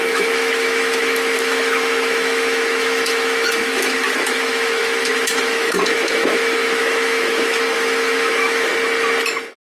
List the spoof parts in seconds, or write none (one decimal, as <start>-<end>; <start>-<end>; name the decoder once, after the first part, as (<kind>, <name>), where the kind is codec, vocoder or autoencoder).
0.0-8.7 (autoencoder, DAC-VAE)